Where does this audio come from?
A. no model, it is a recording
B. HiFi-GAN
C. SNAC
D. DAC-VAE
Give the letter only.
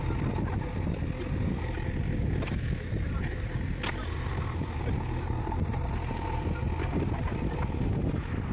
A